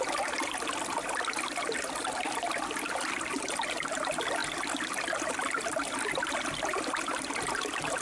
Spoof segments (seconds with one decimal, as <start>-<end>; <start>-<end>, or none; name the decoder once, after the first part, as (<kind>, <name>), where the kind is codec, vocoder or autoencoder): none